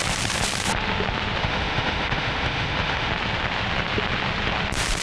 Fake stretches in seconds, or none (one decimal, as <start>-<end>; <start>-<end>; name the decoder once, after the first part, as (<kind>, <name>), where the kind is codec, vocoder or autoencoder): 1.4-3.1 (autoencoder, DAC-VAE)

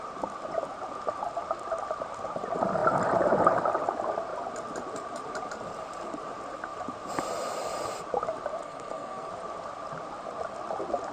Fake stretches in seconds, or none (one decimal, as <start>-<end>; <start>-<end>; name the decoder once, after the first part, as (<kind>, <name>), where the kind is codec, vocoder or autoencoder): 8.6-9.3 (codec, SNAC)

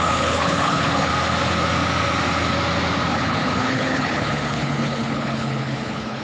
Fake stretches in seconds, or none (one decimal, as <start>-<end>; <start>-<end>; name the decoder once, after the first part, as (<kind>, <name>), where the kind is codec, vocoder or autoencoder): 0.0-1.1 (codec, HILCodec); 3.1-6.2